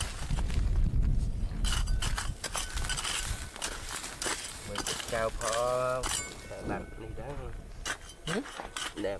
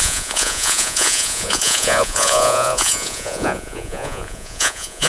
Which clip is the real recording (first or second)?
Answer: first